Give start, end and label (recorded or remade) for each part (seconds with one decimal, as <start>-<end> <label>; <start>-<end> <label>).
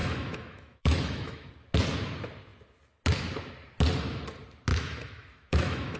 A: 0.0-1.5 remade; 1.5-4.7 recorded; 4.7-6.0 remade